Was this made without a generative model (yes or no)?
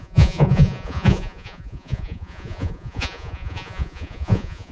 no